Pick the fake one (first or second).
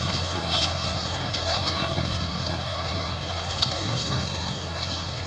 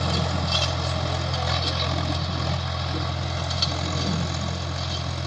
first